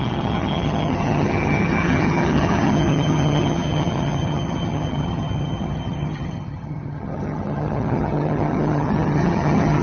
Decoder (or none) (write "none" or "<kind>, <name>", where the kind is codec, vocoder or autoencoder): vocoder, HiFi-GAN